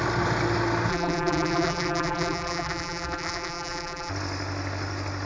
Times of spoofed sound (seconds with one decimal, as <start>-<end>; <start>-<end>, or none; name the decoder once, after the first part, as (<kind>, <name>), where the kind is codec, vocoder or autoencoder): 0.9-4.1 (vocoder, BigVGAN v2)